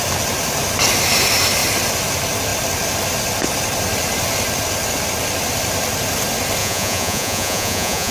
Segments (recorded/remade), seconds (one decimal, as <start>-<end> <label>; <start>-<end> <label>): 0.0-6.6 recorded; 6.6-8.1 remade